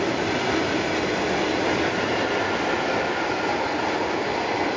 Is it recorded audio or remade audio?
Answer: recorded